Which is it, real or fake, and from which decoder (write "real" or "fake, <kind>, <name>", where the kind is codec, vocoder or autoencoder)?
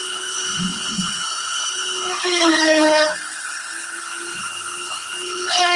fake, codec, HILCodec